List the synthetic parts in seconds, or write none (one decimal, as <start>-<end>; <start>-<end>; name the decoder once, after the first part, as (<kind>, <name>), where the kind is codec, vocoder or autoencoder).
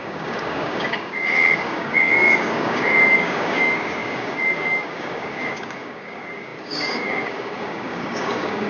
0.0-8.7 (codec, DAC)